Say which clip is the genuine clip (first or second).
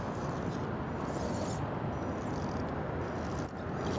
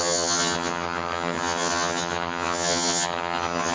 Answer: first